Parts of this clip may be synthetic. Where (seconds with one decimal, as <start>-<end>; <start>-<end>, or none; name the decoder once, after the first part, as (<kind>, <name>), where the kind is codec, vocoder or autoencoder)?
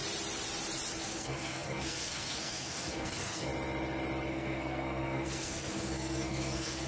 1.0-3.5 (codec, SNAC); 4.3-6.9